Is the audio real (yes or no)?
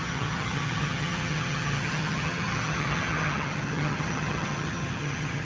no